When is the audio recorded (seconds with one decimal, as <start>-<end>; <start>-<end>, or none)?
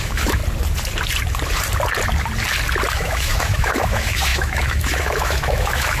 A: 0.4-2.9